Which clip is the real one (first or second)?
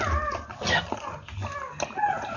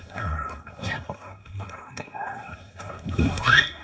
first